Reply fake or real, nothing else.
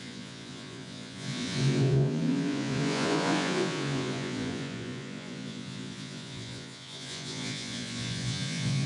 fake